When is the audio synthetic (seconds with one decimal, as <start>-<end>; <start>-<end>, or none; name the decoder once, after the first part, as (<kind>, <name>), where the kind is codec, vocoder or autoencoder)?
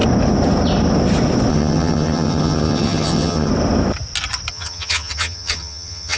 1.5-3.5 (vocoder, HiFi-GAN); 4.5-6.2